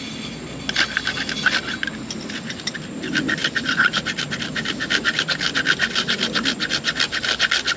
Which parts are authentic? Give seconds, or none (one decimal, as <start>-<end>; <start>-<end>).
0.0-7.8